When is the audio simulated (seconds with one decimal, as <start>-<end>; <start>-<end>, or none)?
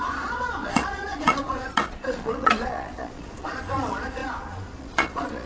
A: 0.0-5.5